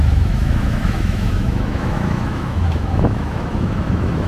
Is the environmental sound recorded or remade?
remade